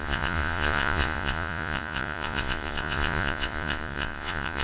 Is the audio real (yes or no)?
no